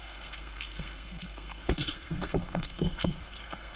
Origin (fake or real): fake